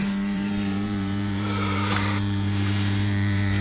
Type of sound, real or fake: fake